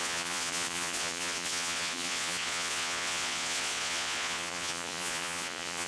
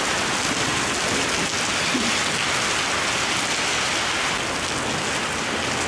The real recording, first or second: second